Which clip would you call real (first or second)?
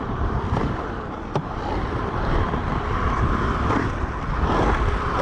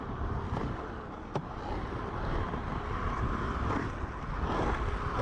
second